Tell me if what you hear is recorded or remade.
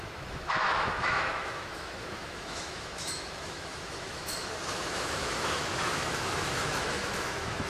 remade